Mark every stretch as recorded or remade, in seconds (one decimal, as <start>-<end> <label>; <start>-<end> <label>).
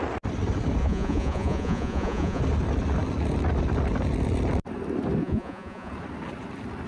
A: 0.0-0.8 recorded; 0.8-2.4 remade; 2.4-5.2 recorded; 5.2-5.9 remade; 5.9-6.9 recorded